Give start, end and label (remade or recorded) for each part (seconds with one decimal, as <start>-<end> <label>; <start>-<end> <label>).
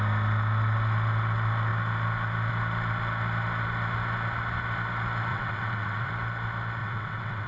0.0-5.3 recorded; 5.3-6.1 remade; 6.1-6.8 recorded; 6.8-7.5 remade